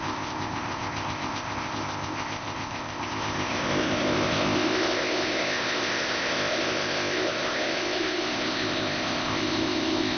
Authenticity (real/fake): fake